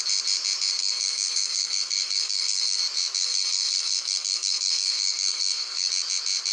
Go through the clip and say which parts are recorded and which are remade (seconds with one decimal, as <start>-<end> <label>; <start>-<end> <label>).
0.0-0.8 recorded; 0.8-2.8 remade; 2.8-3.2 recorded; 3.2-5.9 remade; 5.9-6.5 recorded